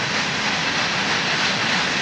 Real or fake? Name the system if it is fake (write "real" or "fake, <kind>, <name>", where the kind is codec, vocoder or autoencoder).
real